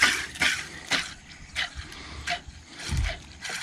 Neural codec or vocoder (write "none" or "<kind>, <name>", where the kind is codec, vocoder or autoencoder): none